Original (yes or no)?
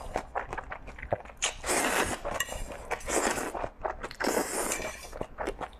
yes